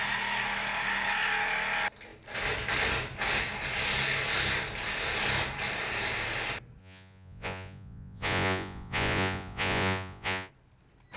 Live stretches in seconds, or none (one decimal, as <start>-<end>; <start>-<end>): 0.0-6.8; 10.5-11.2